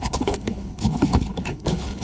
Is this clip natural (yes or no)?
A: no